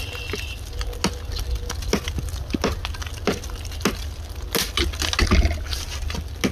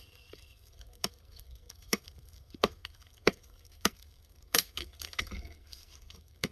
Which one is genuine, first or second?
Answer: first